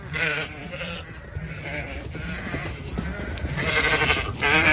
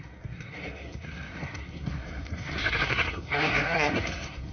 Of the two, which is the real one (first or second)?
first